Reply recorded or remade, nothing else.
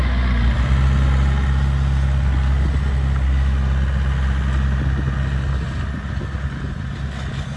recorded